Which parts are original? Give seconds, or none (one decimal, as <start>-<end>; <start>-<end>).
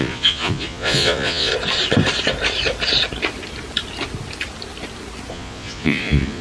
1.5-5.3